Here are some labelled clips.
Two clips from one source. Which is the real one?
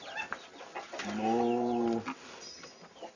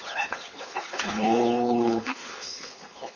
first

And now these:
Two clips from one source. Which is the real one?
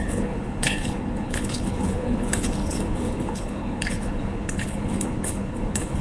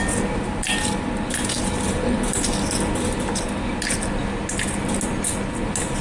second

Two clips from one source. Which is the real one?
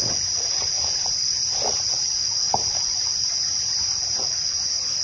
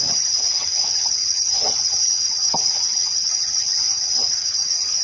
first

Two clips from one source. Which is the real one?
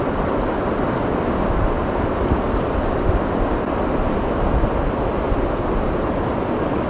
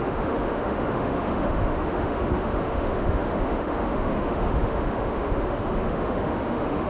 first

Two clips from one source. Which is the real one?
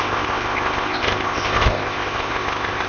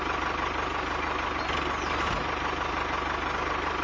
second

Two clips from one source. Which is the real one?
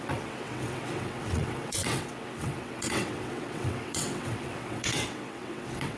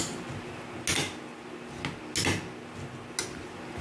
second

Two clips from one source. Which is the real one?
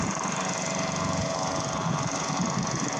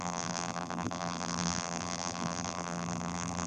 first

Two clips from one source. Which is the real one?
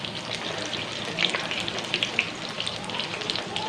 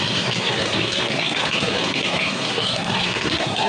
first